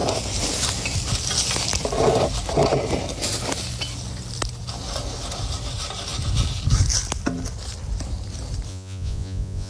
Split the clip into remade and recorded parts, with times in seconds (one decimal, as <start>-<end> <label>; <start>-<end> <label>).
0.0-8.7 recorded; 8.7-9.7 remade